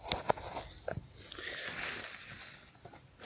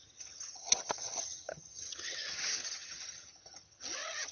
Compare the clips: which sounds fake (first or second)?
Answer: second